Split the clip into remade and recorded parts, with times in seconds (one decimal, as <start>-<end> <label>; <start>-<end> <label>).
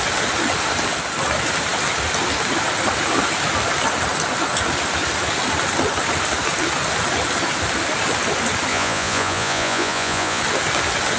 0.0-8.7 recorded; 8.7-10.4 remade; 10.4-11.2 recorded